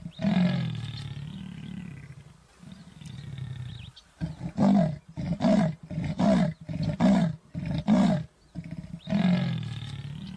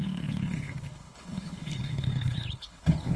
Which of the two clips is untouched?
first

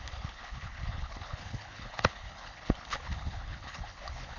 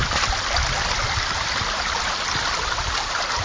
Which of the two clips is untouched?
second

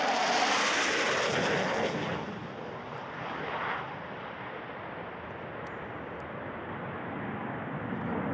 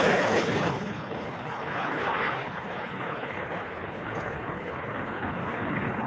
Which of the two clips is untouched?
first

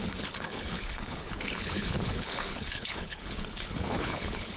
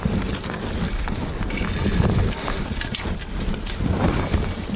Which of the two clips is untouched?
second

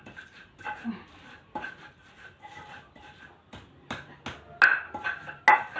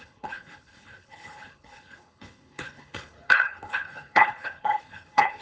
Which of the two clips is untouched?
first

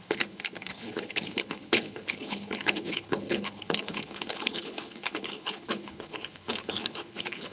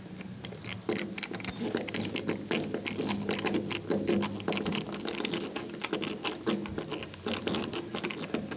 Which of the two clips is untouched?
second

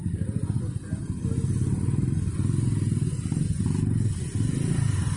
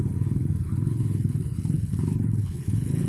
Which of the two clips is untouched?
first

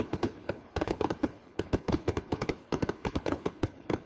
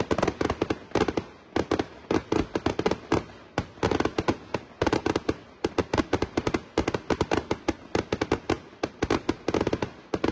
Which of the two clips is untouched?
second